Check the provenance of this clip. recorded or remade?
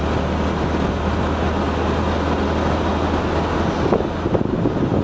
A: recorded